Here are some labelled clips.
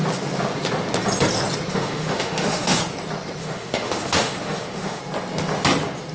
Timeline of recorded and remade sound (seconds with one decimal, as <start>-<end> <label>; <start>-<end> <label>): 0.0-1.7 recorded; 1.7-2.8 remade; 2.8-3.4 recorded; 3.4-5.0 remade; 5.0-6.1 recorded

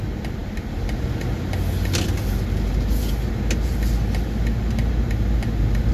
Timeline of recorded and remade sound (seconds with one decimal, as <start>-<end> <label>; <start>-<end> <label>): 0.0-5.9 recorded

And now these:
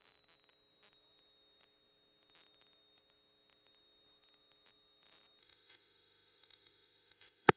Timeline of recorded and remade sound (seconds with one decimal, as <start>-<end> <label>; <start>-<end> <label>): 0.0-5.4 recorded; 5.4-7.6 remade